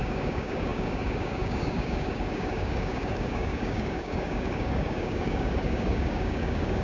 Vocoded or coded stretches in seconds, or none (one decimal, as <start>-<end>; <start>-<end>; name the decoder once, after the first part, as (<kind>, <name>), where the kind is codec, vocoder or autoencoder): 0.0-6.8 (codec, DAC)